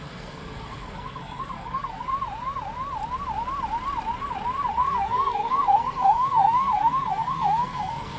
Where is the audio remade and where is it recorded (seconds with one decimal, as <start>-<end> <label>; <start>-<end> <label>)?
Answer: 0.0-2.1 remade; 2.1-4.7 recorded; 4.7-8.2 remade